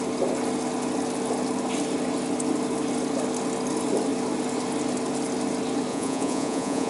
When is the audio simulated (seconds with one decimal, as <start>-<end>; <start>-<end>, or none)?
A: 5.9-6.9